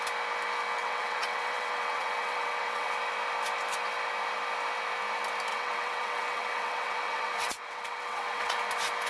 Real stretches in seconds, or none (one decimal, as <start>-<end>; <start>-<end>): 0.0-0.8; 2.9-5.5; 8.6-9.1